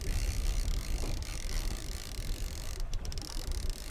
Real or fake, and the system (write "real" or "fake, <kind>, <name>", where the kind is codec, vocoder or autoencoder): real